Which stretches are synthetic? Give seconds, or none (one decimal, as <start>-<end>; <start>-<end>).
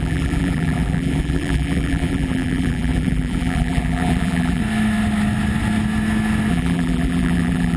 0.0-4.6; 6.5-7.8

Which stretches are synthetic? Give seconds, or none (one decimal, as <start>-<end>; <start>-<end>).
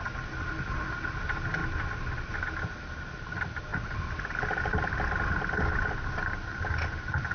none